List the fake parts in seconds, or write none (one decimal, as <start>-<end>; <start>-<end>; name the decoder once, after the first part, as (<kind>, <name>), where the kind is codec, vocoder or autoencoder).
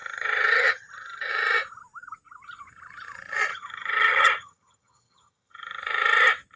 0.0-1.3 (vocoder, HiFi-GAN); 3.5-5.8